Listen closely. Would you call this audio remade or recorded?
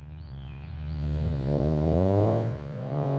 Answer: remade